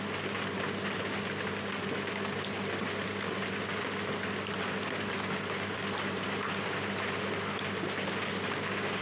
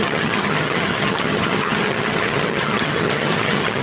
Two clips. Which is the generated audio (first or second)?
second